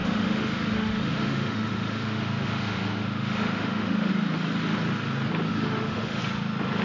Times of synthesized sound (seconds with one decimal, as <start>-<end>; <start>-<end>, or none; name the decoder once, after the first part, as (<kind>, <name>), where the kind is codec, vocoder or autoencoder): 0.0-4.1 (autoencoder, DAC-VAE); 5.5-6.2